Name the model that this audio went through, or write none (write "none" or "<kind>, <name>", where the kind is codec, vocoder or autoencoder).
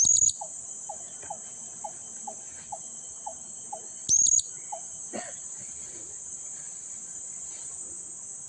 none